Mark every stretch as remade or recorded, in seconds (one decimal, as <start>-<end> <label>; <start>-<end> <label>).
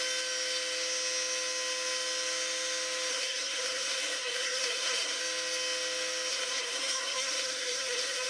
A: 0.0-3.1 recorded; 3.1-5.2 remade; 5.2-6.3 recorded; 6.3-8.3 remade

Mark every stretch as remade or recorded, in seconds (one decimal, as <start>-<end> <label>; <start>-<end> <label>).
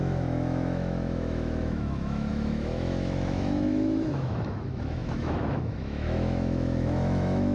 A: 0.0-7.5 remade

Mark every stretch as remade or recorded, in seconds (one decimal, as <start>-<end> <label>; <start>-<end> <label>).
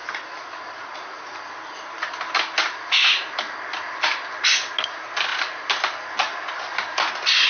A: 0.0-7.5 recorded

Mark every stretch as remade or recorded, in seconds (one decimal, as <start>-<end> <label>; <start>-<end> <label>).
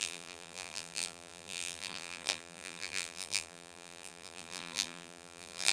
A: 0.0-5.7 remade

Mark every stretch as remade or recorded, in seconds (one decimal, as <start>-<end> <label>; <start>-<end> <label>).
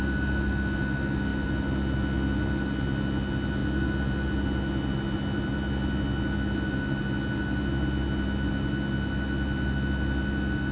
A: 0.0-10.7 recorded